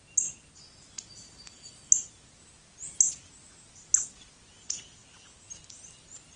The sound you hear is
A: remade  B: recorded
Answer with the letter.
B